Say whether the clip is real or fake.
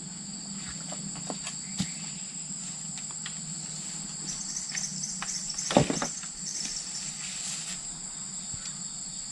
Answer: real